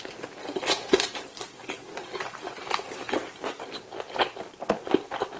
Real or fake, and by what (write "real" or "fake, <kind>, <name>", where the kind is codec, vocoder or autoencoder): real